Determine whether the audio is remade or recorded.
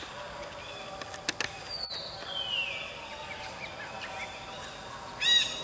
recorded